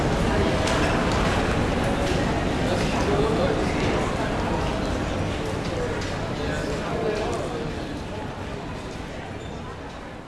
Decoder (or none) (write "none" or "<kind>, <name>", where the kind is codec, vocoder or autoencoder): none